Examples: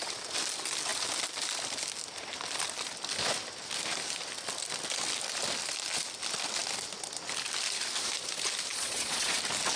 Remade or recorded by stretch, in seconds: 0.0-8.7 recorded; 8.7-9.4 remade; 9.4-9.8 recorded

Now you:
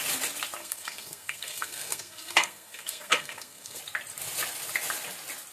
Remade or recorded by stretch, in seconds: 0.0-0.6 recorded; 0.6-3.8 remade; 3.8-5.5 recorded